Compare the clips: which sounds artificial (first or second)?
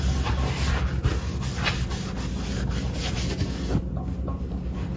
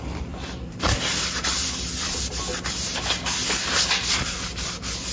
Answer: second